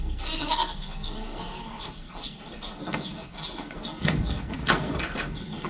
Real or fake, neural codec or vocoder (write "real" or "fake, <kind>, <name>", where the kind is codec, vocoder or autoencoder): fake, codec, SNAC